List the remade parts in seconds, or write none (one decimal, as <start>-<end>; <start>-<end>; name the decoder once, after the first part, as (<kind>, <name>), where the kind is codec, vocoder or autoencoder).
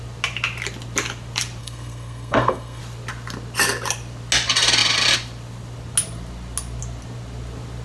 1.6-2.8 (codec, SNAC)